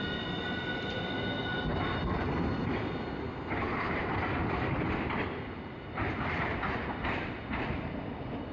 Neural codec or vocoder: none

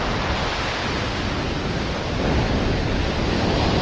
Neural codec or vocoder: none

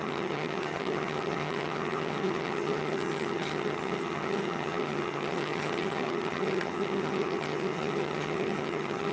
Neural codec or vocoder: vocoder, HiFi-GAN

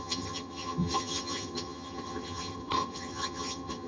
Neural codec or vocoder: vocoder, HiFi-GAN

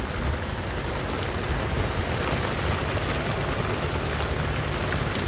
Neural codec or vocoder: none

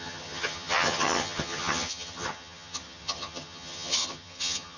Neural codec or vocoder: vocoder, HiFi-GAN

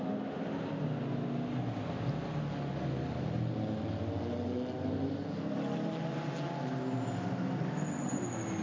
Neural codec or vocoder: none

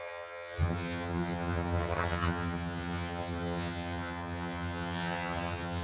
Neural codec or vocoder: vocoder, HiFi-GAN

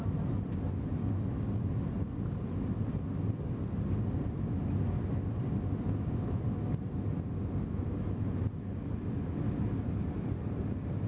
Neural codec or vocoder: none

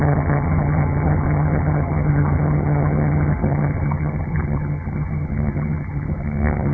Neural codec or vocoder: vocoder, HiFi-GAN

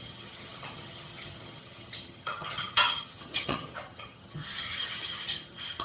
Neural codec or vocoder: vocoder, HiFi-GAN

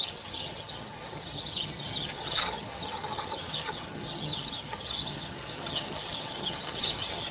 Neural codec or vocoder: vocoder, HiFi-GAN